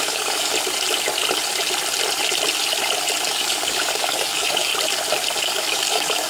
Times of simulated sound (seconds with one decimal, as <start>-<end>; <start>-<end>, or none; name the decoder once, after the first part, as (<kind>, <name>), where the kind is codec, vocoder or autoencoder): 0.0-0.5 (codec, DAC); 3.3-4.7; 5.4-6.3